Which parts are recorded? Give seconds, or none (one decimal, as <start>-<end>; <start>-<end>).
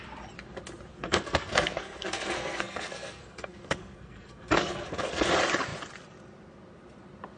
0.0-0.9; 5.3-7.4